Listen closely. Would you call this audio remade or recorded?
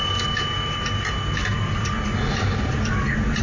recorded